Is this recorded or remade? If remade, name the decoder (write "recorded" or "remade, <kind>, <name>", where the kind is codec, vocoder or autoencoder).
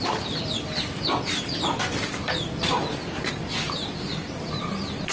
recorded